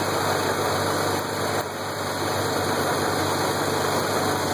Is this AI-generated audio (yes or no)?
no